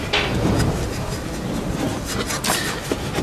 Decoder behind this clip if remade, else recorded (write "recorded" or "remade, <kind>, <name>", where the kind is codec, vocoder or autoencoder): recorded